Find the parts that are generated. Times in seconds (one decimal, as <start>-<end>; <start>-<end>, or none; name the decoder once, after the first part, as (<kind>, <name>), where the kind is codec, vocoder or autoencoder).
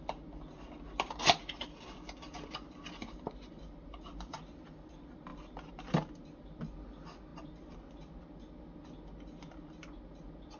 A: none